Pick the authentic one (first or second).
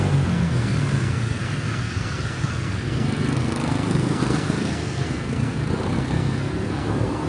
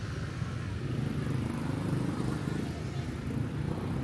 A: second